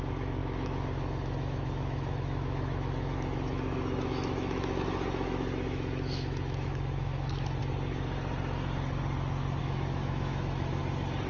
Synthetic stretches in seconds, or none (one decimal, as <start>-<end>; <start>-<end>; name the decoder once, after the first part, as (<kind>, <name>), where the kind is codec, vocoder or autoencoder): 0.0-7.6 (autoencoder, DAC-VAE); 9.6-10.8